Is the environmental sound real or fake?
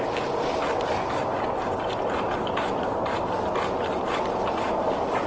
real